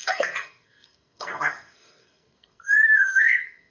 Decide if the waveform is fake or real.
fake